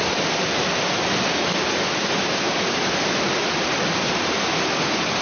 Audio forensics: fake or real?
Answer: real